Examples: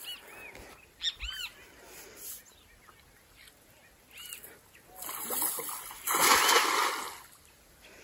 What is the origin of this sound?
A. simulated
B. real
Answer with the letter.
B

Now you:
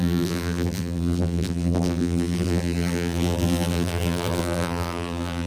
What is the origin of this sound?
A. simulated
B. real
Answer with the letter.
A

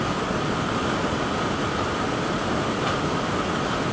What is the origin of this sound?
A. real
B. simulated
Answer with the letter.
A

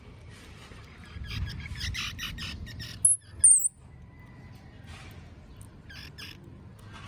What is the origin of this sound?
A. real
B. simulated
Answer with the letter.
A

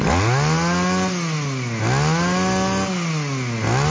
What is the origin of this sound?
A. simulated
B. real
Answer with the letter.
B